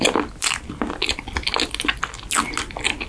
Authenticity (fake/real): real